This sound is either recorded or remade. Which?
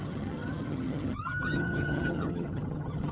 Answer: remade